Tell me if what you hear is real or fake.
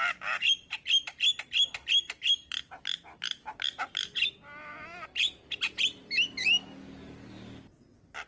real